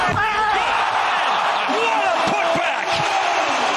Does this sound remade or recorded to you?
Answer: recorded